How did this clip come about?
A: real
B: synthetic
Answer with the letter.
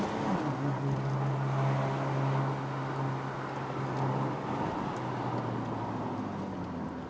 A